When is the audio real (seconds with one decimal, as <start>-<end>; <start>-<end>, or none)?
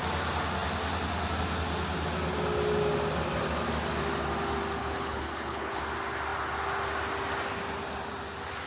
0.0-4.8; 5.8-8.7